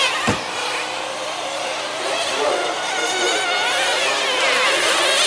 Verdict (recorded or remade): recorded